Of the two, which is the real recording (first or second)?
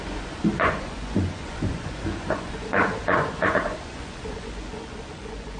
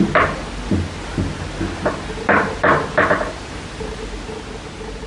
second